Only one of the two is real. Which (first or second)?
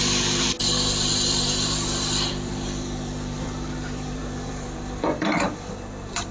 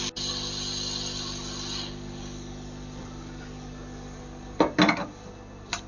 second